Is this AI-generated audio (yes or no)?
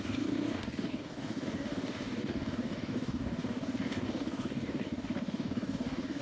yes